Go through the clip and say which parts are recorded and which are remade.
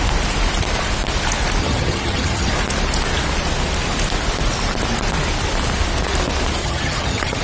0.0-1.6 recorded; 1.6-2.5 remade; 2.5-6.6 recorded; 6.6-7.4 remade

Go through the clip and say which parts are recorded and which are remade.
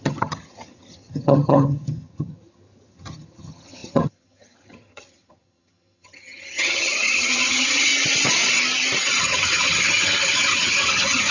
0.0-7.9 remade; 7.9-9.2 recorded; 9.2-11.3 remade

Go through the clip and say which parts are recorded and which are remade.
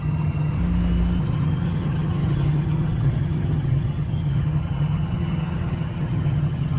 0.0-0.6 remade; 0.6-1.2 recorded; 1.2-6.8 remade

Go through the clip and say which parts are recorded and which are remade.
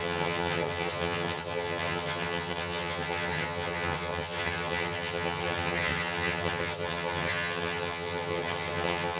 0.0-9.2 remade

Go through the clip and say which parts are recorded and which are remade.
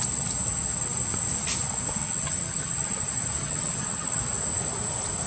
0.0-2.0 recorded; 2.0-3.0 remade; 3.0-3.4 recorded; 3.4-4.2 remade; 4.2-5.3 recorded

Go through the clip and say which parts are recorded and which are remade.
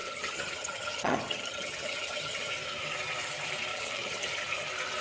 0.0-2.5 remade; 2.5-3.7 recorded; 3.7-4.4 remade; 4.4-5.0 recorded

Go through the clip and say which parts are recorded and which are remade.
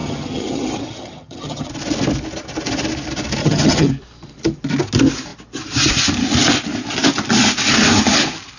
0.0-1.7 remade; 1.7-3.4 recorded; 3.4-3.9 remade; 3.9-8.6 recorded